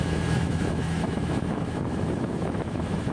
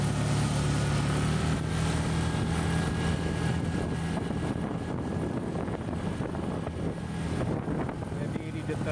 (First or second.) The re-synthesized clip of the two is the first